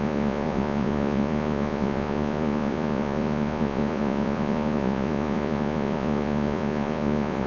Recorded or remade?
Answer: remade